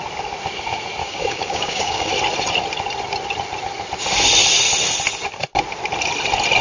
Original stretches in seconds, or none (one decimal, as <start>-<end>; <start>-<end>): 0.0-1.0; 2.1-6.6